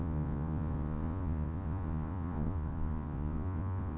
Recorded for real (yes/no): no